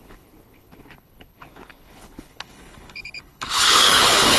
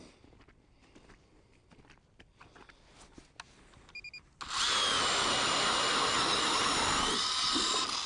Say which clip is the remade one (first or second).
first